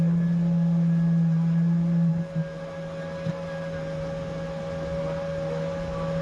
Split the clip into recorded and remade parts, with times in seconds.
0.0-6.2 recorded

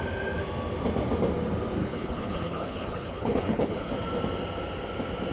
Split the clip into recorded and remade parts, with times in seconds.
0.0-1.8 recorded; 1.8-3.9 remade; 3.9-5.3 recorded